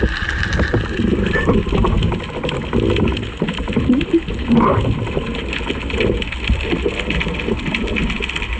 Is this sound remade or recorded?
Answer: recorded